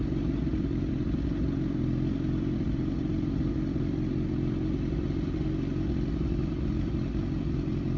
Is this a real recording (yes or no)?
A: no